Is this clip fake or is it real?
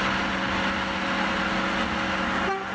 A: real